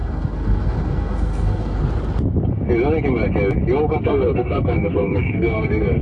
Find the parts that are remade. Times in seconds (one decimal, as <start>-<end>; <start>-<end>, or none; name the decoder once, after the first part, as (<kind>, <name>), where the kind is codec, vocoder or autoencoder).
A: 0.0-1.8 (codec, SNAC); 4.0-6.0